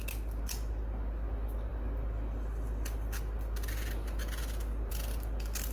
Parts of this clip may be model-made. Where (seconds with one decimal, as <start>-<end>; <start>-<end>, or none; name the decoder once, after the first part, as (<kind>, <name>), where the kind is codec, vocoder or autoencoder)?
none